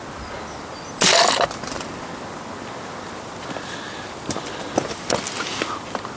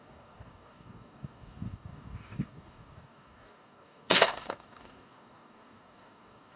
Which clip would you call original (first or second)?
first